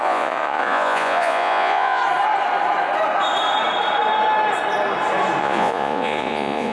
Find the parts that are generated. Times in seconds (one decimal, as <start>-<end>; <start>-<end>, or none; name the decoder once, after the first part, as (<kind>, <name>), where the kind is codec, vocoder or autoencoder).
0.0-2.0 (vocoder, Vocos); 5.4-6.7